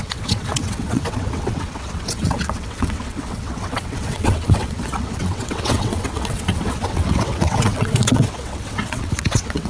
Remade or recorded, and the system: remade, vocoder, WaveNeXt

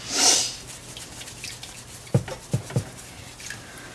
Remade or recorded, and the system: recorded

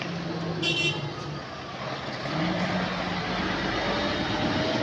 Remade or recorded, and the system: recorded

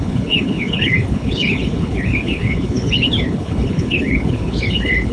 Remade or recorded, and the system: remade, codec, HILCodec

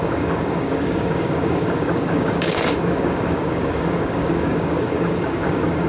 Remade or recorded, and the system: remade, codec, DAC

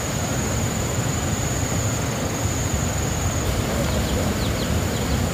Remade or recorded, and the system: recorded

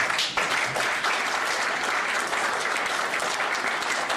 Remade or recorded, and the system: recorded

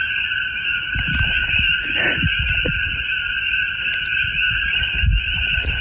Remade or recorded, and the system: recorded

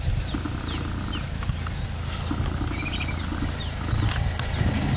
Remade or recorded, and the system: recorded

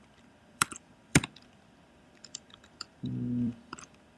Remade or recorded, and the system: remade, vocoder, BigVGAN v2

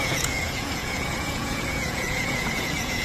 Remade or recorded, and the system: remade, vocoder, Vocos